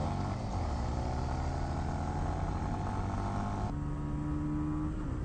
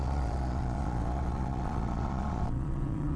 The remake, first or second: second